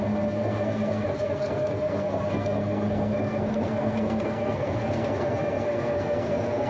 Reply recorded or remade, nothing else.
remade